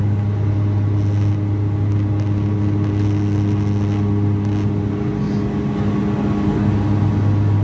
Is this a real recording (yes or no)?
yes